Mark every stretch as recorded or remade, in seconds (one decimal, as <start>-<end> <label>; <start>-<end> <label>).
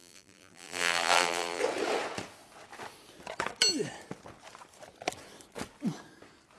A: 0.0-1.6 remade; 1.6-6.6 recorded